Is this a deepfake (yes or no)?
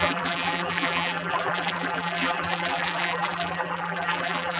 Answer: yes